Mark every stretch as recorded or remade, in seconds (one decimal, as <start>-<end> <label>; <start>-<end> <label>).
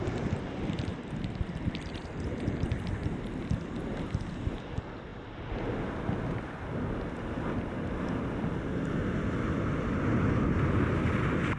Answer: 0.0-11.6 recorded